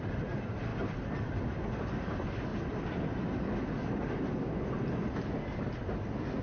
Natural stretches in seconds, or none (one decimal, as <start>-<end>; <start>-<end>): 0.0-0.7; 1.4-2.5; 3.1-6.4